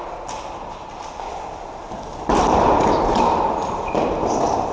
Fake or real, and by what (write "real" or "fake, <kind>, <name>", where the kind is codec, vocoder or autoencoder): real